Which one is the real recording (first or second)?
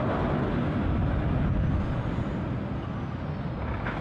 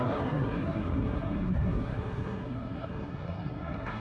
first